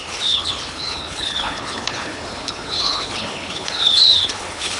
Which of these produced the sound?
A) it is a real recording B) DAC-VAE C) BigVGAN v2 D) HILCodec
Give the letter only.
D